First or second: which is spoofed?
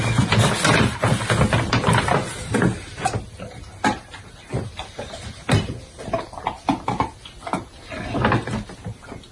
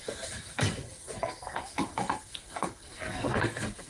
second